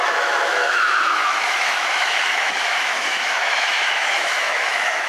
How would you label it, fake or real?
fake